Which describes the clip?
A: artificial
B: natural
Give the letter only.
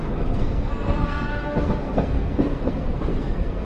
A